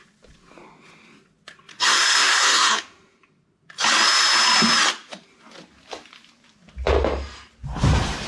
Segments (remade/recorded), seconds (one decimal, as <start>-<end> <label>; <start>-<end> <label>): 0.0-1.7 recorded; 1.7-2.8 remade; 2.8-8.3 recorded